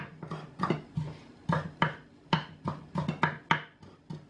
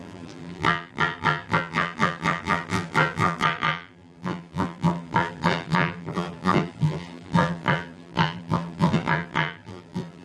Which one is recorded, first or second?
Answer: first